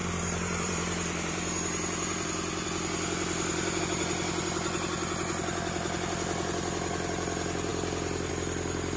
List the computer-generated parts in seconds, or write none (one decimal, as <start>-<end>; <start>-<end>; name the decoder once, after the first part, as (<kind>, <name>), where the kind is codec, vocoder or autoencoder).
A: 0.0-3.8 (vocoder, BigVGAN v2)